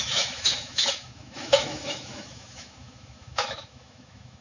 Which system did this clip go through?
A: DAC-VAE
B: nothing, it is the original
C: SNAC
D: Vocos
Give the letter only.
A